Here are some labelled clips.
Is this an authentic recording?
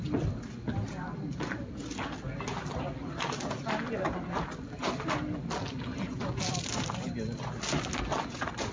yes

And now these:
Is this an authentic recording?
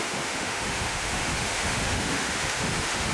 no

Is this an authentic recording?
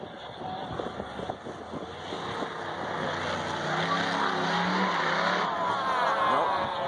yes